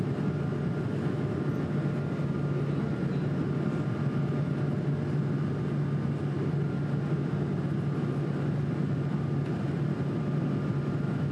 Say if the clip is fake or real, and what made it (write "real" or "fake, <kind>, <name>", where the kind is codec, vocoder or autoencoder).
real